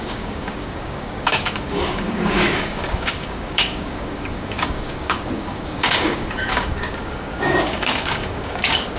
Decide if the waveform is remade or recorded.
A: remade